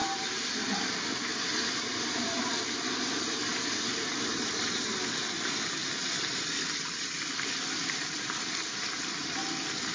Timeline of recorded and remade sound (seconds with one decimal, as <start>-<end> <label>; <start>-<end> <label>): 0.0-9.9 remade